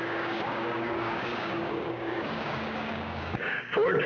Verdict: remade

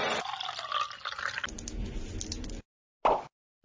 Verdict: recorded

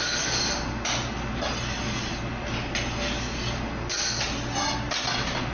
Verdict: recorded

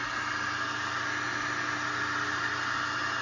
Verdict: recorded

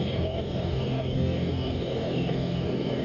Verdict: remade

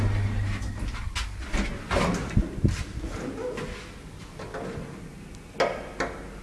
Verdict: recorded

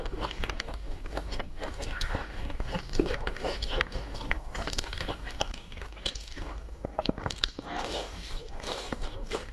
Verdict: remade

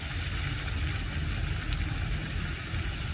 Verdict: recorded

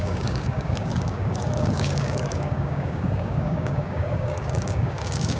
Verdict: remade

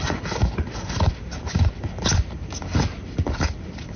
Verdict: recorded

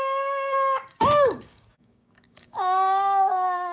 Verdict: remade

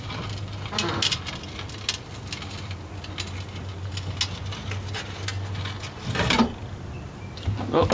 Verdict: recorded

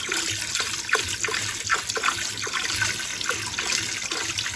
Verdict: recorded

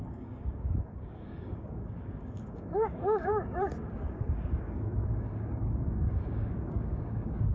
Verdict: remade